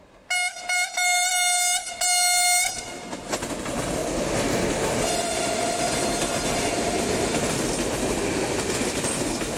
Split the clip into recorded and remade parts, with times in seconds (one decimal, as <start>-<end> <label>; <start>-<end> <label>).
0.0-9.6 recorded